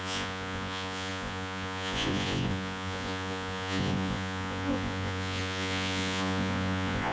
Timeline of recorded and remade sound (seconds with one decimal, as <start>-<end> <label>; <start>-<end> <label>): 0.0-7.1 remade